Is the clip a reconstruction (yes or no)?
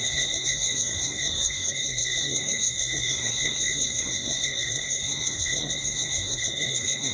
yes